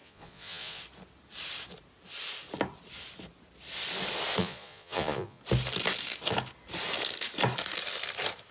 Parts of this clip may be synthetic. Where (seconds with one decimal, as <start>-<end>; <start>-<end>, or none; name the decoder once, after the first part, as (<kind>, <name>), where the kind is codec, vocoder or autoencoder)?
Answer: 0.0-0.8 (vocoder, Vocos); 4.4-5.4